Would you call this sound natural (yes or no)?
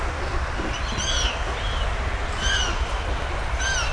yes